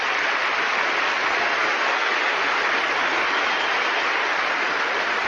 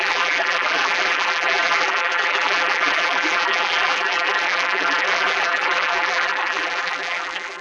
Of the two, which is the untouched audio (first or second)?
first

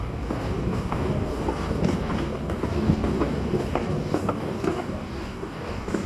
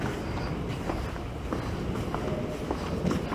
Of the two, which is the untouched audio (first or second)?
second